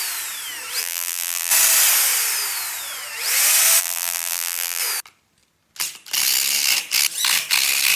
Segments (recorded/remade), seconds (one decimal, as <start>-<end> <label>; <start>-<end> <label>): 0.0-0.8 recorded; 0.8-1.5 remade; 1.5-3.8 recorded; 3.8-4.8 remade; 4.8-8.0 recorded